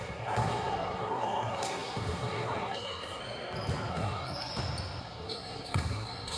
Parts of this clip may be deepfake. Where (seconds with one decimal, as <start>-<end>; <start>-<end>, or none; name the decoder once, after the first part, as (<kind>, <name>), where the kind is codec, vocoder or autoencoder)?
0.0-3.2 (codec, SNAC); 3.9-4.5; 5.0-6.4